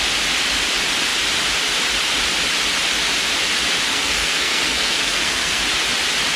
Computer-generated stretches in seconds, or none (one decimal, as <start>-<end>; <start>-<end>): 3.9-5.6